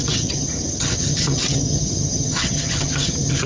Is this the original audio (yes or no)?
no